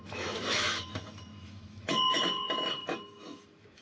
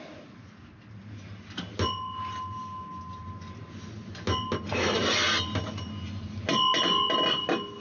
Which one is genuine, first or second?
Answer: second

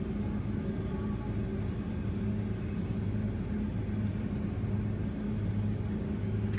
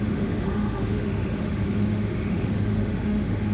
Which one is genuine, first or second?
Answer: first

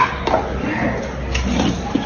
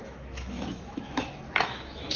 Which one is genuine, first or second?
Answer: first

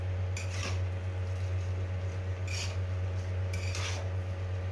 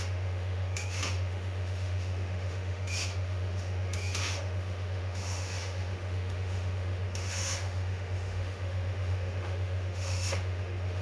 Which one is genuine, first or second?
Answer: first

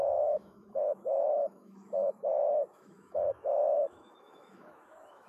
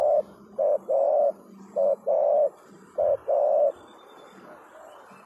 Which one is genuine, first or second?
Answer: second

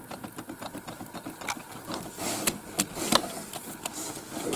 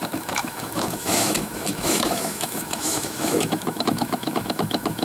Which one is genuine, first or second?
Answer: first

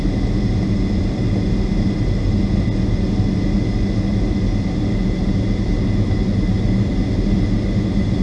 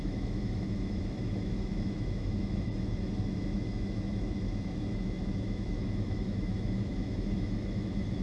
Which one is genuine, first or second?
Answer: first